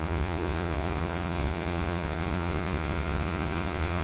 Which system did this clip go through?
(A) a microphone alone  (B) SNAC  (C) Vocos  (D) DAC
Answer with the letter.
C